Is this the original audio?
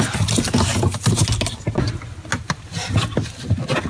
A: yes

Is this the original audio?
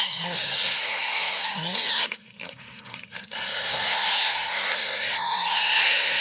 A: no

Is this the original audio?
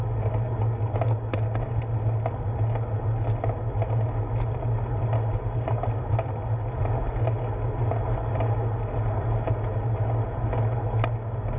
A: yes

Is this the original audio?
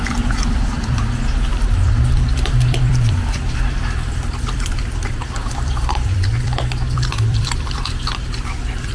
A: no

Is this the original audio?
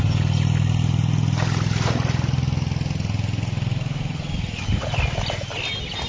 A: yes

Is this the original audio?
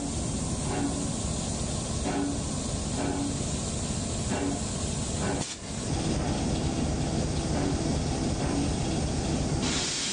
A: yes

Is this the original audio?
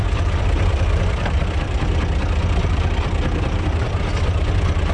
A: no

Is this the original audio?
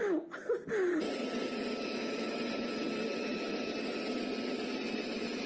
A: yes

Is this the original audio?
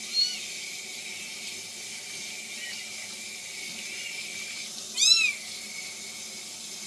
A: yes